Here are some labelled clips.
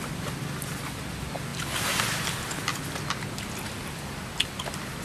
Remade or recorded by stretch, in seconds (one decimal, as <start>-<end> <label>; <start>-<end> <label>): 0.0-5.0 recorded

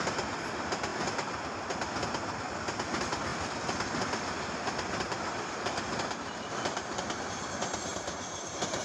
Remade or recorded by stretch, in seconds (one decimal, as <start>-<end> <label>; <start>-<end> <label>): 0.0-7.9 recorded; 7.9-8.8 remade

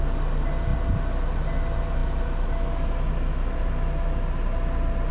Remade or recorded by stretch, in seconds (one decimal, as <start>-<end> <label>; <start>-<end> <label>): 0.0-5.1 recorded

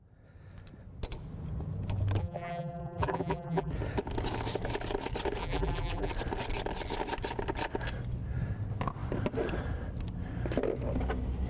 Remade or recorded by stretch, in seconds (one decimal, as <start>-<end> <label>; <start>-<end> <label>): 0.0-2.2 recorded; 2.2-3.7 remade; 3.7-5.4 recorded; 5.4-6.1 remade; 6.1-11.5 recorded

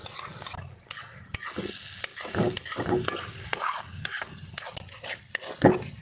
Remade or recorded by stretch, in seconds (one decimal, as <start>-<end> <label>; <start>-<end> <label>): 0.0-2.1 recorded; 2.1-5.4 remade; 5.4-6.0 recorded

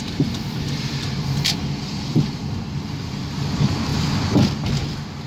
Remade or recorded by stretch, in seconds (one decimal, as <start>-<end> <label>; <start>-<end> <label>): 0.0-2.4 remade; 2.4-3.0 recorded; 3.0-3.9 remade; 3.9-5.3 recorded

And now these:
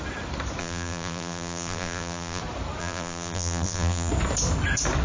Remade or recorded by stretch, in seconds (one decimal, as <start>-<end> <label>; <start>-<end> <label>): 0.0-0.6 recorded; 0.6-2.4 remade; 2.4-2.8 recorded; 2.8-4.1 remade; 4.1-5.0 recorded